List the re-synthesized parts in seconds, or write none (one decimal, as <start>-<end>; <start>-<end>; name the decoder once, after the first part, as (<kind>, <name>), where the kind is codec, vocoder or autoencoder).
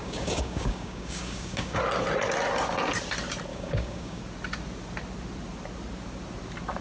0.0-1.8 (codec, DAC); 3.5-4.2